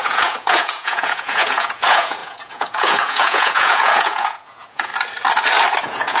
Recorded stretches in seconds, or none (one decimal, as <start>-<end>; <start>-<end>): 4.9-5.8